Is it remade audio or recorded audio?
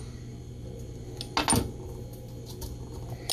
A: recorded